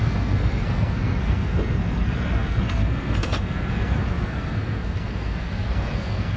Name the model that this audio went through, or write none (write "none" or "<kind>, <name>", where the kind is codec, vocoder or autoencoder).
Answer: codec, SNAC